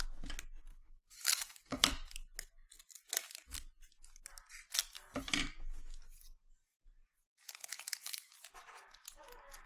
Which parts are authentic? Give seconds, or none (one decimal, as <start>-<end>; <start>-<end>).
0.0-0.7; 1.9-7.6; 8.3-9.7